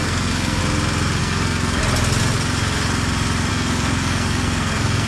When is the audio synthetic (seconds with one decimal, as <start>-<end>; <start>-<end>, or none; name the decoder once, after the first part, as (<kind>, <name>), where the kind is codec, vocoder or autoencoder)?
0.0-0.6 (codec, SNAC); 1.2-1.8; 3.5-5.1